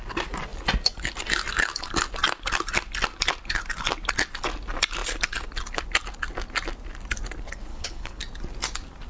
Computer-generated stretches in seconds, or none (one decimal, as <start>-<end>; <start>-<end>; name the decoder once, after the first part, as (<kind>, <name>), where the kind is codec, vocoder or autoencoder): 7.7-8.2 (codec, HILCodec)